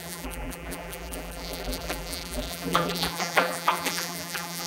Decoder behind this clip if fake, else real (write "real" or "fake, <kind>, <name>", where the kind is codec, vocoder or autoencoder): fake, vocoder, BigVGAN v2